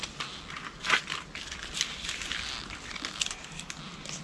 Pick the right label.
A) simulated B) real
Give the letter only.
B